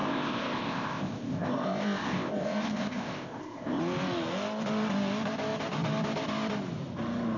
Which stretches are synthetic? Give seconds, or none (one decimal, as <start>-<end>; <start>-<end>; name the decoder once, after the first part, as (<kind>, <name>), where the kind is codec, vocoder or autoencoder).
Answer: 0.0-3.8 (codec, ZipCodec)